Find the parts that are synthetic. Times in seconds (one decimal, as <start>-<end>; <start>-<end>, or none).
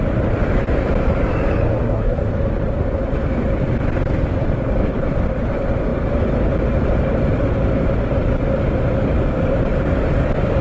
1.8-2.3